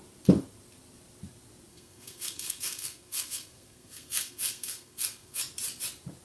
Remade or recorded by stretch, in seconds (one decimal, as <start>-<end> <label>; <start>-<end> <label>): 0.0-1.7 recorded; 1.7-5.4 remade; 5.4-6.2 recorded